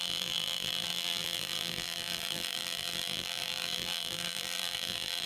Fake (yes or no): yes